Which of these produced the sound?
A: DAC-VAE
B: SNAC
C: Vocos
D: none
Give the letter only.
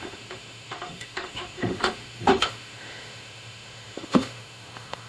A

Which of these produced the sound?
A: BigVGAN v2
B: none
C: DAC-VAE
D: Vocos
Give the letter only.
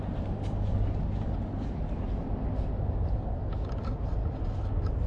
B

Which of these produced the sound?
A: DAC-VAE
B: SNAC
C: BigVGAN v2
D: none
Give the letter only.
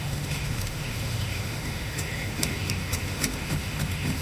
A